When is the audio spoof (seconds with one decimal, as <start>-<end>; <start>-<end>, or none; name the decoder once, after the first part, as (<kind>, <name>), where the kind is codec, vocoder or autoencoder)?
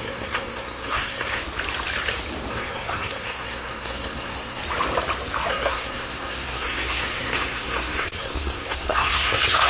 0.0-1.4 (codec, SNAC); 2.5-4.6; 5.5-9.7